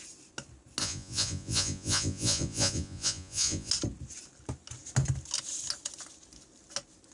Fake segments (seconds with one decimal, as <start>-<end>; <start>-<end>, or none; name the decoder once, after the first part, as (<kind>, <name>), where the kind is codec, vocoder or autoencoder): 0.8-3.7 (vocoder, Vocos)